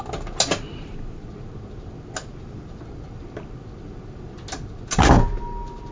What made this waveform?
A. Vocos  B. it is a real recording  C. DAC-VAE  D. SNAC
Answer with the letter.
B